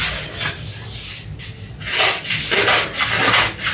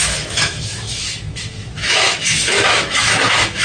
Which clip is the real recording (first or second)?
first